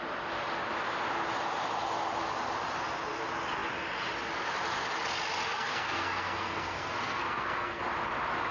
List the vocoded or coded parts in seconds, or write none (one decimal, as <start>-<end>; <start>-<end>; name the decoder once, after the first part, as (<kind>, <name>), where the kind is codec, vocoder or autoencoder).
5.5-7.8 (codec, SNAC)